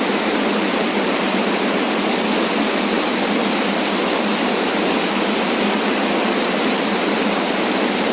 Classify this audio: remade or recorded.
recorded